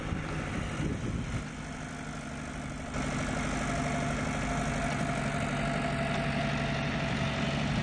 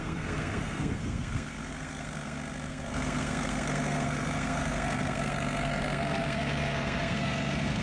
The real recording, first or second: first